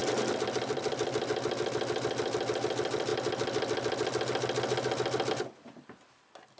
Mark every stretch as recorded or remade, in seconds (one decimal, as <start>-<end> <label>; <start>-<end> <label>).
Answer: 0.0-6.6 recorded